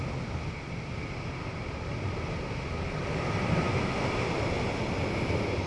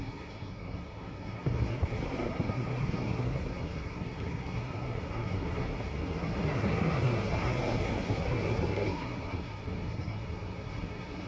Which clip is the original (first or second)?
first